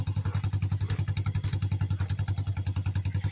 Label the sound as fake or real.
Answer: real